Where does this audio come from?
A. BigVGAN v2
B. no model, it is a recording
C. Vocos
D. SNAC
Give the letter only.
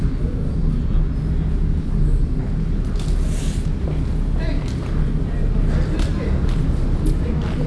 B